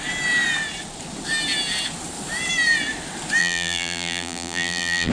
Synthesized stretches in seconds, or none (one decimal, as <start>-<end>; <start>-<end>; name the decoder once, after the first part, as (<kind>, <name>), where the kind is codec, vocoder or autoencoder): 3.4-5.1 (vocoder, BigVGAN v2)